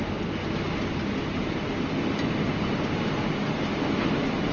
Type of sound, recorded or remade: recorded